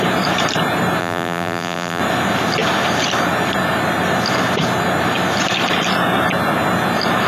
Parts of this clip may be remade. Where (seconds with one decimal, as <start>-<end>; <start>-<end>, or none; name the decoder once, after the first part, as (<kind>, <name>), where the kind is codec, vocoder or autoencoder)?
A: 1.0-2.0 (vocoder, BigVGAN v2)